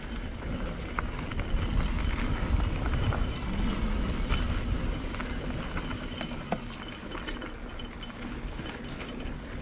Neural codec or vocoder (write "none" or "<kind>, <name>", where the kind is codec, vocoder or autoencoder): none